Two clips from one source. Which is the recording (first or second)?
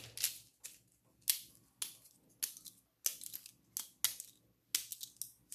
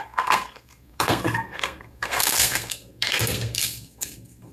first